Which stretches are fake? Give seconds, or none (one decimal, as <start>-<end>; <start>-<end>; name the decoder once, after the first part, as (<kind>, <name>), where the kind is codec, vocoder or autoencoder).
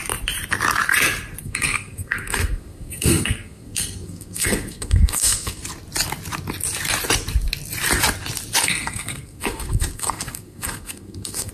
1.4-5.6 (codec, SNAC); 8.6-11.5